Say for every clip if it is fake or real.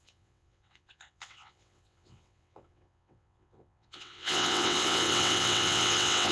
fake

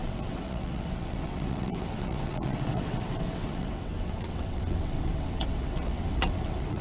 fake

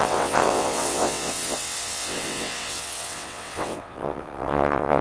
fake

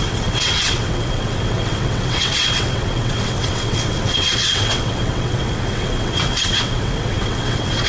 fake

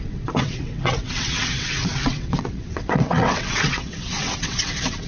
fake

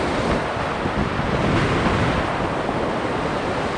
real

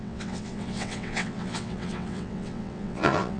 fake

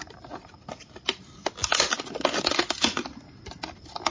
real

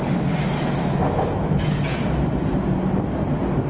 real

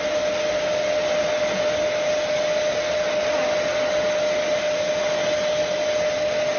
real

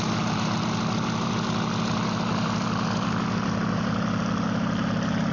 real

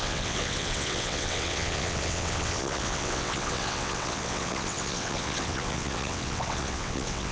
fake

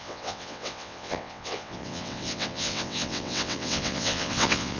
fake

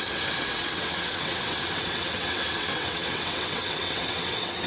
fake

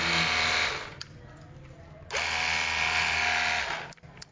real